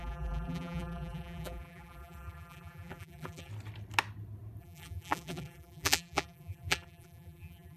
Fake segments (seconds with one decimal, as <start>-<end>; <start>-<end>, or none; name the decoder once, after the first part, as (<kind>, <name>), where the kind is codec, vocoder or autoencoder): 0.0-3.5 (vocoder, BigVGAN v2); 4.6-7.8